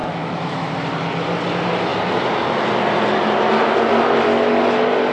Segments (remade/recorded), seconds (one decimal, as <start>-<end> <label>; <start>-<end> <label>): 0.0-0.7 remade; 0.7-5.1 recorded